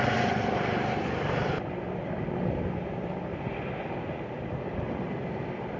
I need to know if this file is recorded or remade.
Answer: recorded